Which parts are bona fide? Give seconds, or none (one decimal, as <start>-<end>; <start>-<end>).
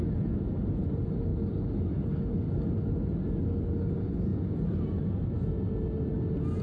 0.0-6.6